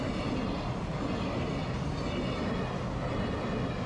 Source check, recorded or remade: recorded